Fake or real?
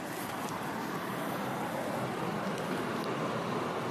real